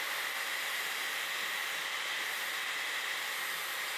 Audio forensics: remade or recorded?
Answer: recorded